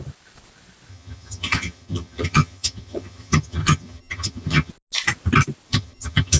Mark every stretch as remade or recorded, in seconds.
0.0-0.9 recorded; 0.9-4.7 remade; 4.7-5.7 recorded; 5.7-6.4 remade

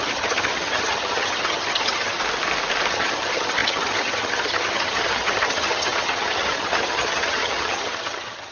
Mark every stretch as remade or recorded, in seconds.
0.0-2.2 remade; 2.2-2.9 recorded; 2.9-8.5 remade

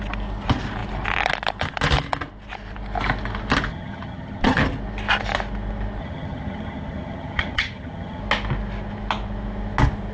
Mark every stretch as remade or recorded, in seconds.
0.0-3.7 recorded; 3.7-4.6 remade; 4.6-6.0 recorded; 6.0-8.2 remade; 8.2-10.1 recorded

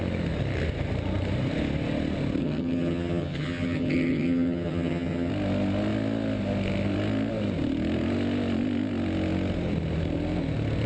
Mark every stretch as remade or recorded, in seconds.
0.0-2.4 recorded; 2.4-5.3 remade; 5.3-10.9 recorded